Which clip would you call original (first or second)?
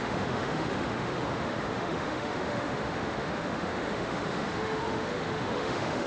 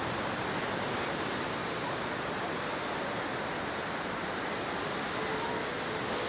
second